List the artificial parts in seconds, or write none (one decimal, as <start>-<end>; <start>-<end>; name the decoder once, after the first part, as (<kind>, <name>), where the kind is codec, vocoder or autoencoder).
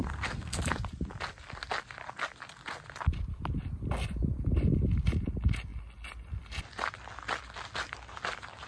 0.0-0.6 (codec, SNAC)